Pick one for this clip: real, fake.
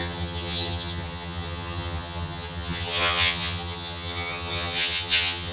fake